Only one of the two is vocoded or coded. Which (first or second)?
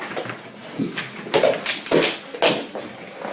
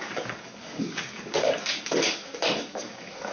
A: second